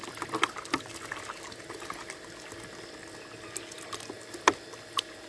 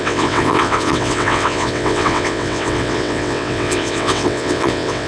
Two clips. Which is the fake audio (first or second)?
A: second